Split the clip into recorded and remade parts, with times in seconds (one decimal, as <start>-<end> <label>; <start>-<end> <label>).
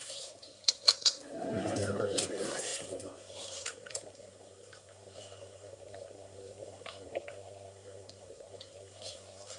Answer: 0.0-9.6 remade